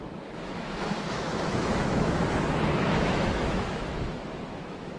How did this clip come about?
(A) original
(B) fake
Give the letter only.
B